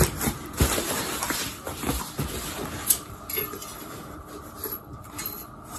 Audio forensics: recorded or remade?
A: recorded